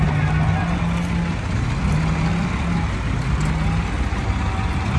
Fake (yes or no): no